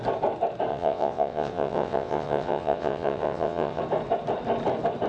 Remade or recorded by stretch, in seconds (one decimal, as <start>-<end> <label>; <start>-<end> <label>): 0.0-0.7 recorded; 0.7-3.8 remade; 3.8-5.1 recorded